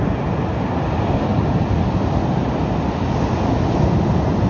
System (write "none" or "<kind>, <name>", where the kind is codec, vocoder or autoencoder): none